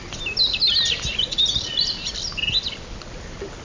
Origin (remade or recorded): recorded